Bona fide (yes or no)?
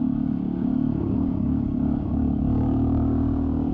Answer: no